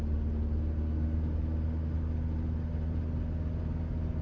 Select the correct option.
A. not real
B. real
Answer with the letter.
B